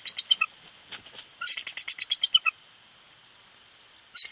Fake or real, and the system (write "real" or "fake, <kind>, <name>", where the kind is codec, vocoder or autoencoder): real